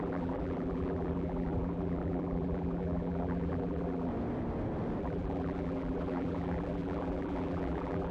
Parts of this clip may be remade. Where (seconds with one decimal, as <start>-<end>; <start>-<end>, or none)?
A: 0.0-4.1; 5.0-8.1